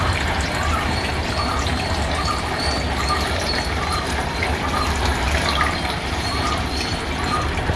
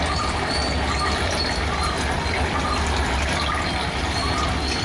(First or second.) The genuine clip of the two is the second